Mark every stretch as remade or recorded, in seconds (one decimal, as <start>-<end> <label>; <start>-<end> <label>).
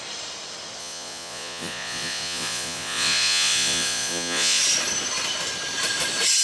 0.0-0.8 recorded; 0.8-4.6 remade; 4.6-6.4 recorded